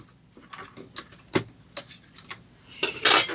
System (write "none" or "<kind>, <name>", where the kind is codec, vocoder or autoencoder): none